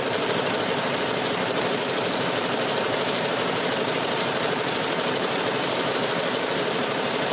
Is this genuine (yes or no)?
no